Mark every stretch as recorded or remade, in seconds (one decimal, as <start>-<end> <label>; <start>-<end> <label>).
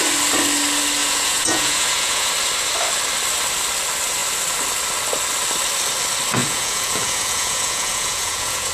0.0-1.0 recorded; 1.0-2.3 remade; 2.3-6.4 recorded; 6.4-8.7 remade